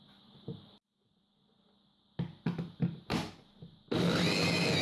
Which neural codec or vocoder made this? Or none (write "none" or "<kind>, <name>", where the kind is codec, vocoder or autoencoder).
none